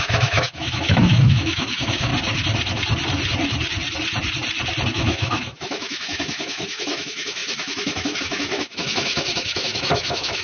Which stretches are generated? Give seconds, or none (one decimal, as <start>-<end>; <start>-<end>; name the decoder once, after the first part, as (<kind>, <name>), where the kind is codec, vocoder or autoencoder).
0.0-2.1 (autoencoder, DAC-VAE); 4.9-10.4